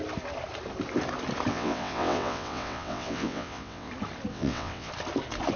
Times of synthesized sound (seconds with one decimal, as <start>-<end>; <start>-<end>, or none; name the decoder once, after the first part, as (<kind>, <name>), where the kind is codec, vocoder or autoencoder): 1.5-3.9 (vocoder, WaveNeXt); 4.3-4.9